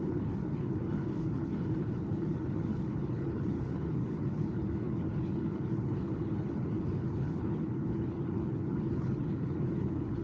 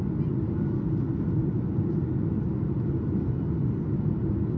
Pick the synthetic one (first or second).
first